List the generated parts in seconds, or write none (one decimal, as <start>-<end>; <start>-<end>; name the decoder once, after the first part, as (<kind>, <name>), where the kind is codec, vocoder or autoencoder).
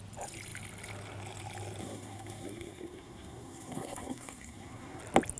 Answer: 1.8-5.0 (codec, SNAC)